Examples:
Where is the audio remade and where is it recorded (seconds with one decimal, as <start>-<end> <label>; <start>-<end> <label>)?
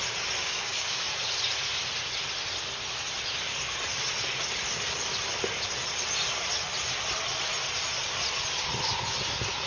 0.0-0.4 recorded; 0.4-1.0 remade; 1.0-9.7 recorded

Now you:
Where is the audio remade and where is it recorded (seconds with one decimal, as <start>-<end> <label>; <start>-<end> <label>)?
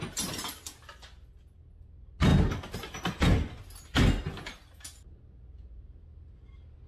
0.0-6.9 recorded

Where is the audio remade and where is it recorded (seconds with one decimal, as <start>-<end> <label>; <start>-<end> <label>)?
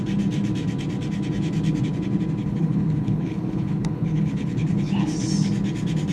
0.0-2.4 recorded; 2.4-4.9 remade; 4.9-6.1 recorded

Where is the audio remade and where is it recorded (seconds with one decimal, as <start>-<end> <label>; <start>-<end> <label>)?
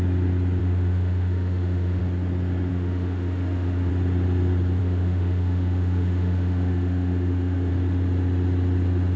0.0-0.6 recorded; 0.6-2.0 remade; 2.0-2.7 recorded; 2.7-3.9 remade; 3.9-4.8 recorded; 4.8-7.7 remade; 7.7-9.2 recorded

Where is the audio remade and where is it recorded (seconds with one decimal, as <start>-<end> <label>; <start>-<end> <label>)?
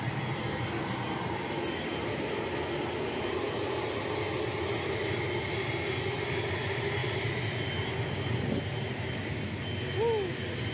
0.0-10.7 recorded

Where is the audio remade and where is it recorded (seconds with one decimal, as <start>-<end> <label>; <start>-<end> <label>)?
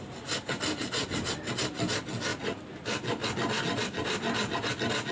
0.0-5.1 recorded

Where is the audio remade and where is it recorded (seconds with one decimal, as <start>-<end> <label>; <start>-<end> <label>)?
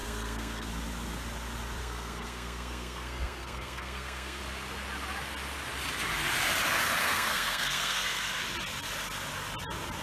0.0-0.7 remade; 0.7-1.8 recorded; 1.8-4.4 remade; 4.4-7.0 recorded; 7.0-8.4 remade; 8.4-10.0 recorded